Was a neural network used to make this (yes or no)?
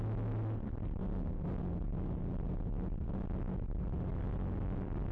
no